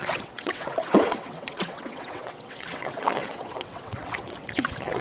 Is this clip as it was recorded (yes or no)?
no